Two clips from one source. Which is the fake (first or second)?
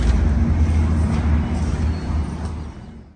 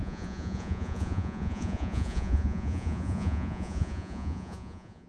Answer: second